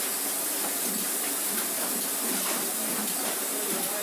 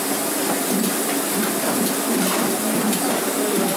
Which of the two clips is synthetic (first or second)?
first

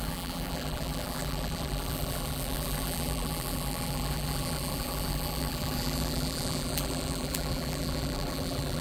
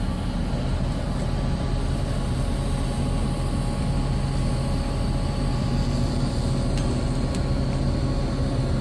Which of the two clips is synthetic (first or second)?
first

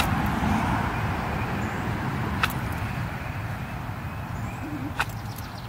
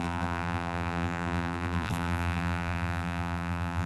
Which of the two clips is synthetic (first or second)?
second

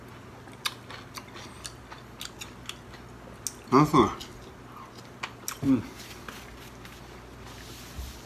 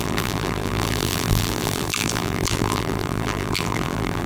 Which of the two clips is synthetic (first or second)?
second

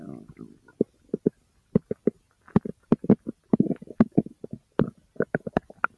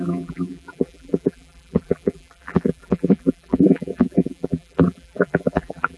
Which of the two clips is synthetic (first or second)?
second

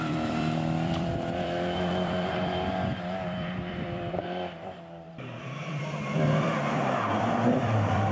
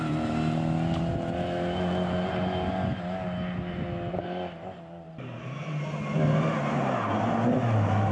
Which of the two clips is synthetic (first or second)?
first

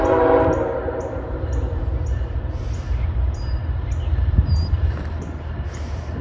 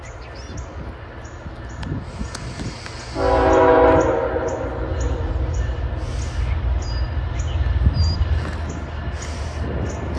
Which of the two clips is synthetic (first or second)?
first